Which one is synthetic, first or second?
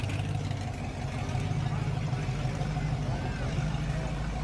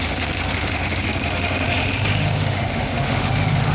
second